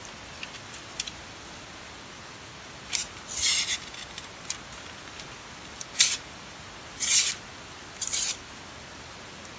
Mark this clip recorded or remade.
recorded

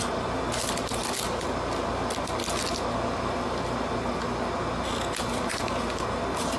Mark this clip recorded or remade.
recorded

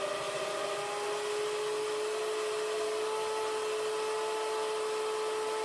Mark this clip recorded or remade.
recorded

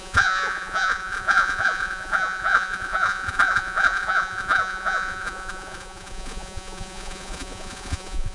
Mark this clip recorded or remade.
remade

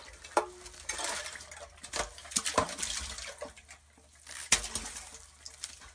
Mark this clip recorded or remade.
recorded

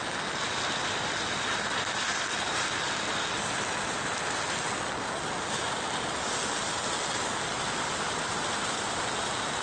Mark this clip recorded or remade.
recorded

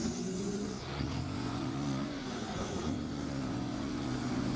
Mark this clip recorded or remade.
remade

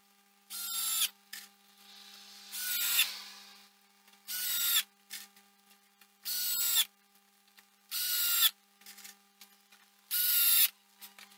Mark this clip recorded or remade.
recorded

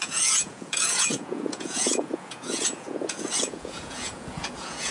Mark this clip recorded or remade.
remade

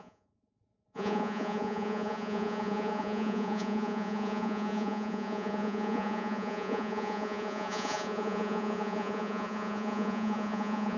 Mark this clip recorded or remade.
remade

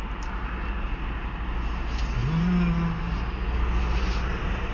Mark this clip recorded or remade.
recorded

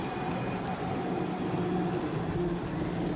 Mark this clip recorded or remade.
recorded